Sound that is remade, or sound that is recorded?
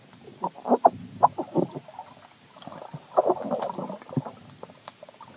recorded